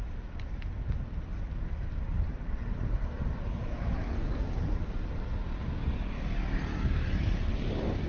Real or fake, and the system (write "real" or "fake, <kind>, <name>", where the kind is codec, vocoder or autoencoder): real